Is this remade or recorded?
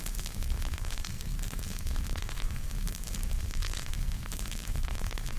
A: remade